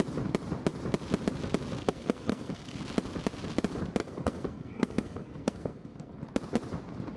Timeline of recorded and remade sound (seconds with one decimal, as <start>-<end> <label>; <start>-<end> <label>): 0.0-1.8 recorded; 1.8-2.8 remade; 2.8-4.0 recorded; 4.0-6.2 remade; 6.2-7.2 recorded